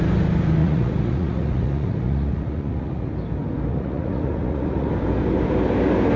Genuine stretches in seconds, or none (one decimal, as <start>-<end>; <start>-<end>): 0.0-0.6; 3.1-3.7; 4.9-6.2

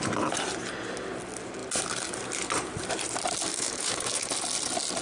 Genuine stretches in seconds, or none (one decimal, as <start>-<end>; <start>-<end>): 0.0-3.5; 4.3-5.0

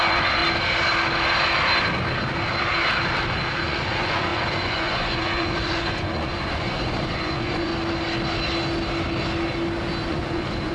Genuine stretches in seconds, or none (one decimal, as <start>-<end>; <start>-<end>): 0.4-3.6; 7.7-10.1

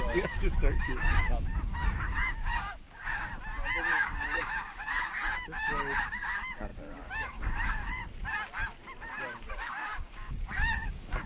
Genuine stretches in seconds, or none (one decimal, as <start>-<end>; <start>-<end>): 3.3-3.9; 8.0-9.5

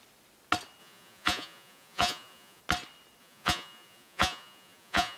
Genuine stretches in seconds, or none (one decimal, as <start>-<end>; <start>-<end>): 0.0-0.8; 2.6-3.2

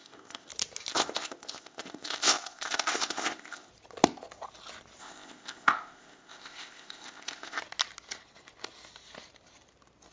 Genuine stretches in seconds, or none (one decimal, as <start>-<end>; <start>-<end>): 0.5-0.9; 3.7-5.0; 7.6-10.1